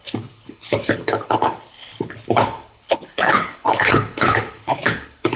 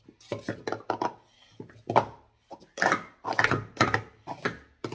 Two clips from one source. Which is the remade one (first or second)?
first